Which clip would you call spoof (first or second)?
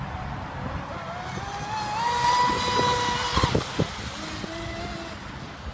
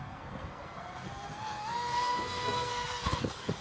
second